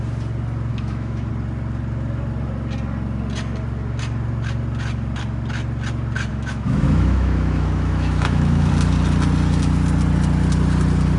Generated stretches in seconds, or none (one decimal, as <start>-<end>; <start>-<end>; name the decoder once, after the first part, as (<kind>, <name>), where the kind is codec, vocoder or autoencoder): 0.7-1.3 (autoencoder, DAC-VAE); 6.3-8.7